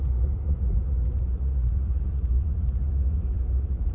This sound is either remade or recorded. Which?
remade